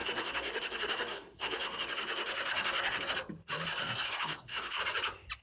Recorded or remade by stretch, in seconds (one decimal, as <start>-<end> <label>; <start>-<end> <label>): 0.0-3.1 remade; 3.1-3.8 recorded; 3.8-4.8 remade; 4.8-5.4 recorded